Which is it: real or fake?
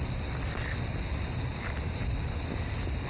real